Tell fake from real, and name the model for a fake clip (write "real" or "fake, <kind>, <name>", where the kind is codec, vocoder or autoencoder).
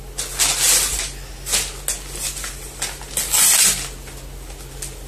real